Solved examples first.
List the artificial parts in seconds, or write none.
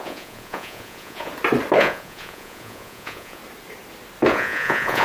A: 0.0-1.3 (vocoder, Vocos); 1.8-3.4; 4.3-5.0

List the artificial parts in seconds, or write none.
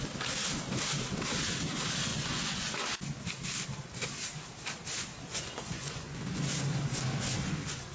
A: 2.1-2.7 (vocoder, Vocos); 5.3-6.4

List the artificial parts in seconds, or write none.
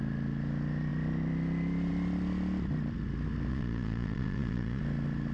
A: 3.5-4.8 (vocoder, Vocos)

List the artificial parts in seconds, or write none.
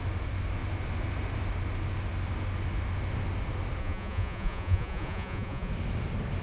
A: 3.8-5.7 (vocoder, Vocos)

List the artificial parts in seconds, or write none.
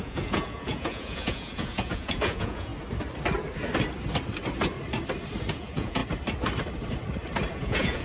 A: 0.0-2.7 (vocoder, Vocos); 5.5-6.0; 7.5-8.0